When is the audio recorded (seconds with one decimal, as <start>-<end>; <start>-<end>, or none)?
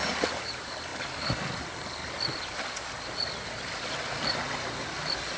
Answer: 0.0-5.4